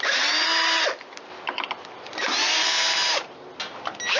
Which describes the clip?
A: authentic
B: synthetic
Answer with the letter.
A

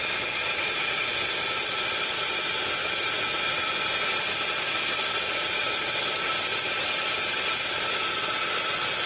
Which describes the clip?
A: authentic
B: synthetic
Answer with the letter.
A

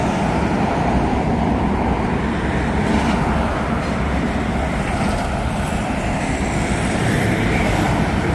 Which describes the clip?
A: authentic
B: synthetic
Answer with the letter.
A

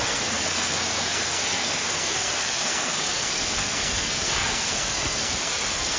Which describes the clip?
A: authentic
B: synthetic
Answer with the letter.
B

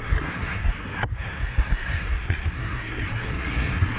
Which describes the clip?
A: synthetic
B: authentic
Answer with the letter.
A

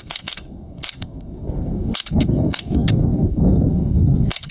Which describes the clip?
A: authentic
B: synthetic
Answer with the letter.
B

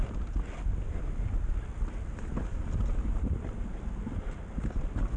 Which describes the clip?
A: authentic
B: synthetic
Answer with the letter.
A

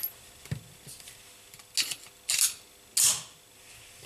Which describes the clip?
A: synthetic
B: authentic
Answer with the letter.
B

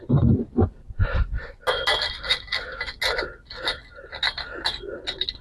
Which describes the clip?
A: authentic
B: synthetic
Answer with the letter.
A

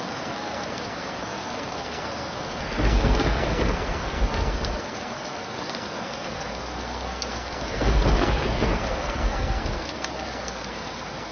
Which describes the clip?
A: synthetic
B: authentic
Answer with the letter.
A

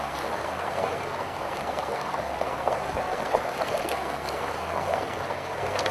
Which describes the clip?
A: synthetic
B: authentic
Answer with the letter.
A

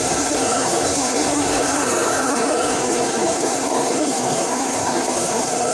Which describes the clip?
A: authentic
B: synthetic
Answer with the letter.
B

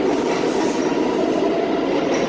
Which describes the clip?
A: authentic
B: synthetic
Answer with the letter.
A